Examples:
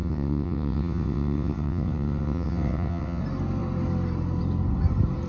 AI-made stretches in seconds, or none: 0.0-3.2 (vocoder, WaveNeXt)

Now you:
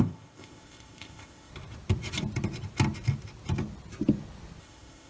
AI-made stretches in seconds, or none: 0.0-1.5 (codec, ZipCodec); 4.6-5.1

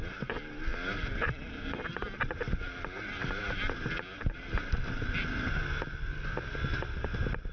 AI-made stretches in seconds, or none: none

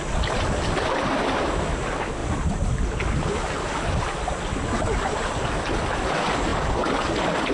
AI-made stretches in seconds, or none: none

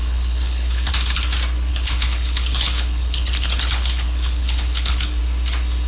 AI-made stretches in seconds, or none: 0.0-0.9 (codec, HILCodec); 1.7-5.2

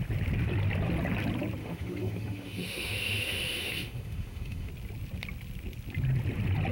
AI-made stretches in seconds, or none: 1.6-4.7 (autoencoder, DAC-VAE)